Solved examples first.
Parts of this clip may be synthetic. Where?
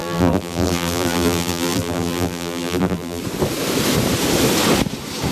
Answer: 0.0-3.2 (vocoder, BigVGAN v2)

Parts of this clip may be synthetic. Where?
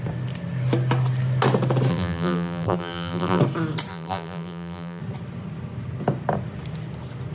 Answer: 1.9-3.4 (vocoder, BigVGAN v2); 3.9-5.0